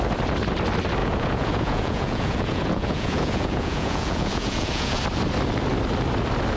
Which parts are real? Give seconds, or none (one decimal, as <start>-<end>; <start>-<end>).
0.0-1.0; 5.0-6.6